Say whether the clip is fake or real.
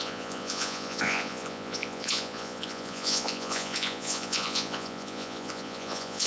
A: fake